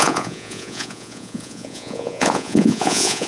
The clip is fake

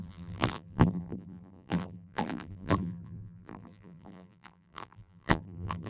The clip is fake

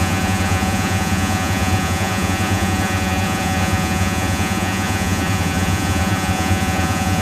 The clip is fake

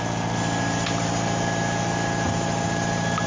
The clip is real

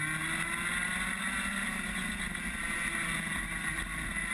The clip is real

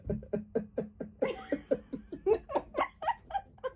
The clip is real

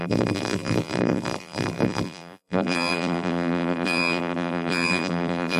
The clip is fake